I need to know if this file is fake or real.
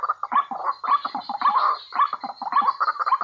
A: real